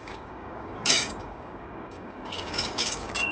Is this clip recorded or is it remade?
remade